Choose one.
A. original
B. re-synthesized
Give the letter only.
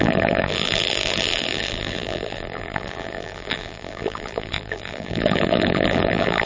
B